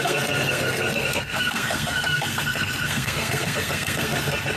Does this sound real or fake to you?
fake